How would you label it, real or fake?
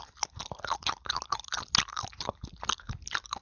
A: real